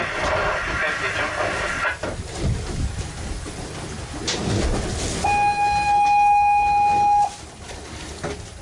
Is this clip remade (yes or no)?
no